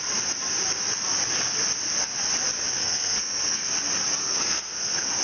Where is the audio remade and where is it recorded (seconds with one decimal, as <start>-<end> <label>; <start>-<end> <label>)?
0.0-2.7 recorded; 2.7-3.6 remade; 3.6-4.2 recorded; 4.2-5.2 remade

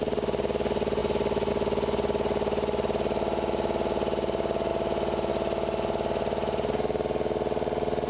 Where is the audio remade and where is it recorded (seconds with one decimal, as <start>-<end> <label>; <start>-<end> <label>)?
0.0-8.1 recorded

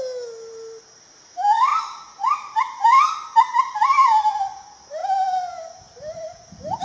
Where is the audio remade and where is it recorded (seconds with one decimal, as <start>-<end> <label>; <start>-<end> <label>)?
0.0-6.8 recorded